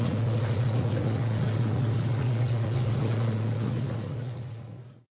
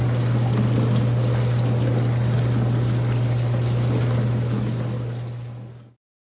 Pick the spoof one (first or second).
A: first